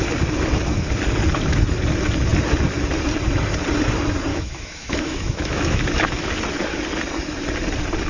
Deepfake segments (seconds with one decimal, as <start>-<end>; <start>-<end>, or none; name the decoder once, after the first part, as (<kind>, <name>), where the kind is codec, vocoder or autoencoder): 4.3-6.3 (autoencoder, DAC-VAE)